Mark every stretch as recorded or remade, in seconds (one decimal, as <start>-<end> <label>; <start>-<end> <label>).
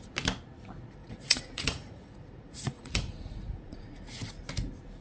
0.0-1.0 recorded; 1.0-4.0 remade; 4.0-5.0 recorded